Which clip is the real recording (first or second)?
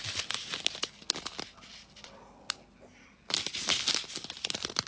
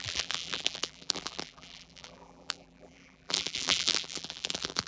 first